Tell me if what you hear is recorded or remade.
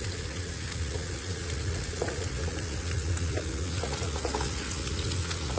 remade